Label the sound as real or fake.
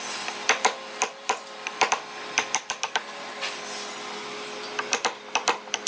real